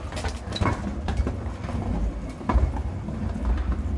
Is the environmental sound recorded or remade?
recorded